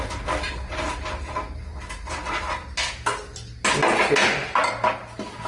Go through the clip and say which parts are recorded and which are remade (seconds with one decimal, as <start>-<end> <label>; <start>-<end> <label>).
0.0-5.5 recorded

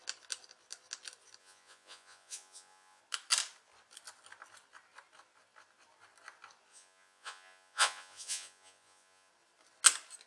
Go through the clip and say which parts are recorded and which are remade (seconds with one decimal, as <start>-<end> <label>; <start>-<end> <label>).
0.0-1.4 recorded; 1.4-3.0 remade; 3.0-6.7 recorded; 6.7-9.3 remade; 9.3-10.3 recorded

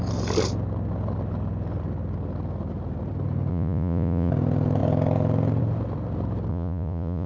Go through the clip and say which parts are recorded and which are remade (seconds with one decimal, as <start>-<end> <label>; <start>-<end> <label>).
0.0-3.5 recorded; 3.5-4.3 remade; 4.3-6.5 recorded; 6.5-7.3 remade

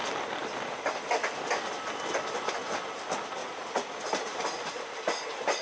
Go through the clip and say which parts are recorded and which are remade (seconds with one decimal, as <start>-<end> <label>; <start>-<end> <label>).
0.0-3.4 recorded; 3.4-3.9 remade; 3.9-5.6 recorded

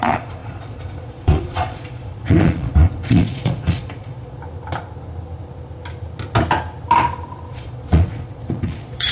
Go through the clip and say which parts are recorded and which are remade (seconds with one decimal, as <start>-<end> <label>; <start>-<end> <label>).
0.0-4.4 remade; 4.4-7.5 recorded; 7.5-9.1 remade

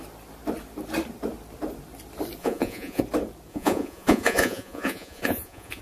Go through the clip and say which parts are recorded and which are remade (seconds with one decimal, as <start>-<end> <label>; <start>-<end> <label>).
0.0-2.4 recorded; 2.4-3.0 remade; 3.0-3.5 recorded; 3.5-5.8 remade

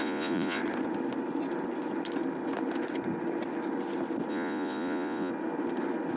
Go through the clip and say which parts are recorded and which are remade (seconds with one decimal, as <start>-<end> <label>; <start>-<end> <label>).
0.0-0.6 remade; 0.6-4.3 recorded; 4.3-5.3 remade; 5.3-6.2 recorded